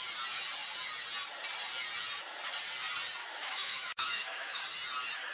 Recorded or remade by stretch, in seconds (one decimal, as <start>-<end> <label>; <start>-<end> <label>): 0.0-3.2 recorded; 3.2-4.6 remade; 4.6-5.3 recorded

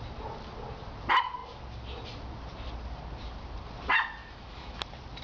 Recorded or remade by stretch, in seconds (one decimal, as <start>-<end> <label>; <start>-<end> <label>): 0.0-4.2 recorded; 4.2-4.8 remade; 4.8-5.2 recorded

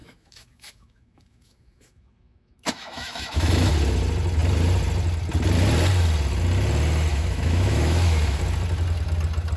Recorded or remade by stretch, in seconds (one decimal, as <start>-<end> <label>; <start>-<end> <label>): 0.0-3.7 remade; 3.7-7.1 recorded; 7.1-8.4 remade; 8.4-9.6 recorded

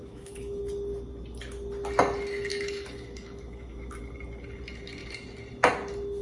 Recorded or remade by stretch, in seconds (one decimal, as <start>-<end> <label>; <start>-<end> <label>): 0.0-0.6 remade; 0.6-2.5 recorded; 2.5-4.0 remade; 4.0-6.2 recorded

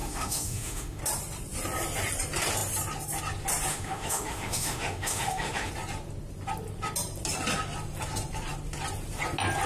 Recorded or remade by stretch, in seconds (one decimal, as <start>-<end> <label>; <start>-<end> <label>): 0.0-1.0 remade; 1.0-3.7 recorded; 3.7-5.7 remade; 5.7-9.7 recorded

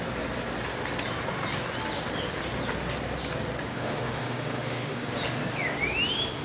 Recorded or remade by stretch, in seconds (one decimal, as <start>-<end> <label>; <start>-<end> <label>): 0.0-3.7 recorded; 3.7-5.1 remade; 5.1-6.4 recorded

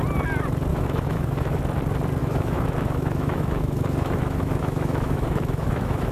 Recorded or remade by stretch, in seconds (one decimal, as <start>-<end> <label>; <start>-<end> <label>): 0.0-0.7 recorded; 0.7-1.6 remade; 1.6-2.2 recorded; 2.2-6.1 remade